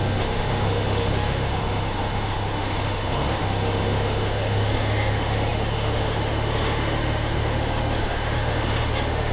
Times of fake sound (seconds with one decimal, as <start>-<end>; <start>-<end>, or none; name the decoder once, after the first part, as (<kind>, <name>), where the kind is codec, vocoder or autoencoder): 0.0-9.3 (autoencoder, DAC-VAE)